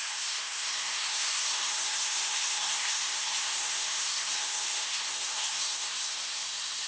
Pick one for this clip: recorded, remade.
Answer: remade